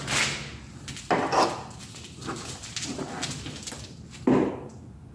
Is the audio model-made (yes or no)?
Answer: no